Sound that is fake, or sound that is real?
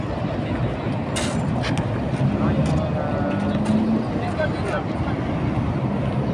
real